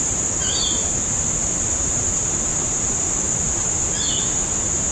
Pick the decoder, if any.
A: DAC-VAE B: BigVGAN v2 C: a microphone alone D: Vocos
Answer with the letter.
B